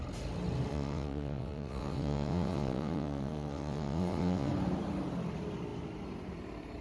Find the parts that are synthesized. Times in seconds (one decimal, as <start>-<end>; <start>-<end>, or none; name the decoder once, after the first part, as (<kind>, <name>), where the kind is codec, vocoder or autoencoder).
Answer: 0.7-4.5 (vocoder, WaveNeXt)